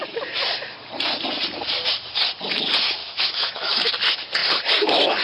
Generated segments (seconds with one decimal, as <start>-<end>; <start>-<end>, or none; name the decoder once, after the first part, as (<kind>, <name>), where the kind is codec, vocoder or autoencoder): 3.0-3.9 (autoencoder, DAC-VAE)